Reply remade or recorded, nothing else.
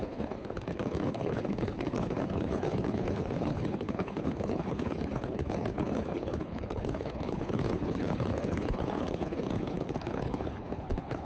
remade